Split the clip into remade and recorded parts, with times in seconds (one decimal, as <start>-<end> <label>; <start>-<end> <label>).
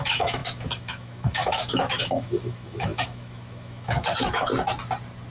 0.0-4.5 remade; 4.5-5.3 recorded